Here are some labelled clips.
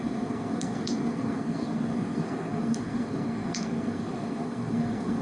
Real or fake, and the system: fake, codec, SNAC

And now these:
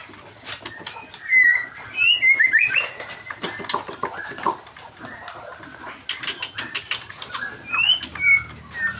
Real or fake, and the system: real